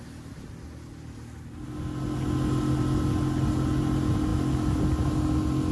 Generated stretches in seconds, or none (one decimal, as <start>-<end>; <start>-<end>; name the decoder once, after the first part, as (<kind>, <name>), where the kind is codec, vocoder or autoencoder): none